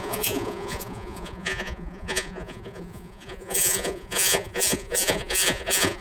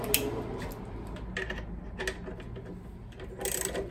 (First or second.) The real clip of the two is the second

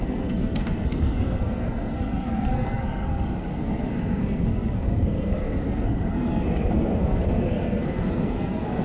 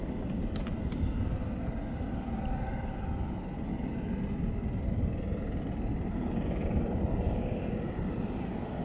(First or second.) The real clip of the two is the second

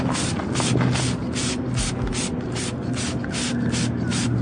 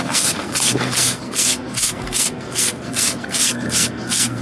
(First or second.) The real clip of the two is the first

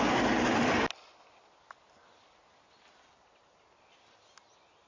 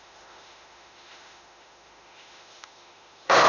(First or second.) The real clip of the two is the first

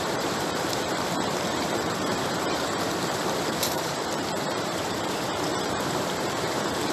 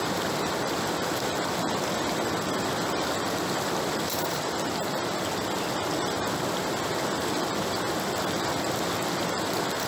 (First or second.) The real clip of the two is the second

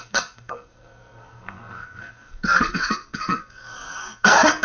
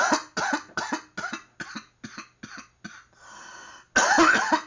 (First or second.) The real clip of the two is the second